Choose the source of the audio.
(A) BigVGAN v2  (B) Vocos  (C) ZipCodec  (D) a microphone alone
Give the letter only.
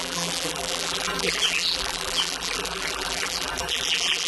A